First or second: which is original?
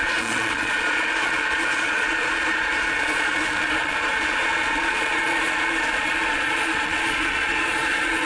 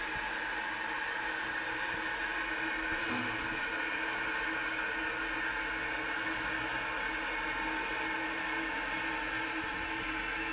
second